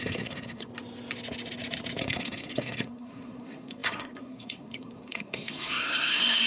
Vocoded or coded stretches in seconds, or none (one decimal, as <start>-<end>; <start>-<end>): 0.0-0.7; 2.0-6.5